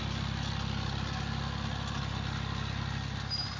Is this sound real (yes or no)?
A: yes